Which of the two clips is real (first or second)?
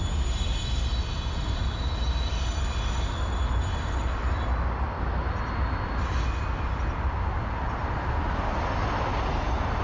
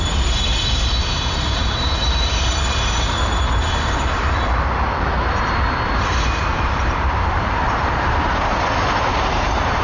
first